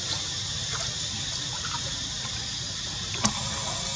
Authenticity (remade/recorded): recorded